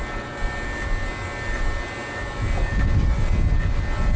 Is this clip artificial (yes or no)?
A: no